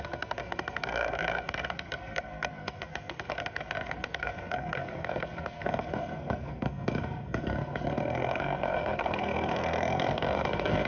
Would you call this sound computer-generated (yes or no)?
yes